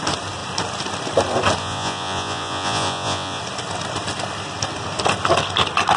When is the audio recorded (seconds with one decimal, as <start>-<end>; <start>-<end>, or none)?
0.0-1.6; 3.4-6.0